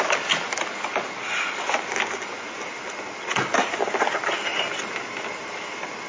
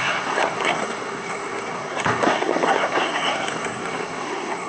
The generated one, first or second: second